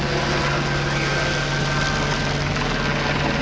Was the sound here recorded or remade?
recorded